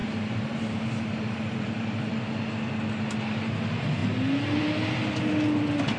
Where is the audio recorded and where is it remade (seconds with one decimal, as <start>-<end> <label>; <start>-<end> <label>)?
0.0-2.1 remade; 2.1-6.0 recorded